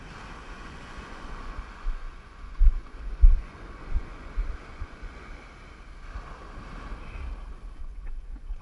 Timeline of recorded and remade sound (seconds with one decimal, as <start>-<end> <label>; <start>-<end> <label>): 0.0-0.4 recorded; 0.4-4.3 remade; 4.3-4.7 recorded; 4.7-5.4 remade; 5.4-7.8 recorded; 7.8-8.6 remade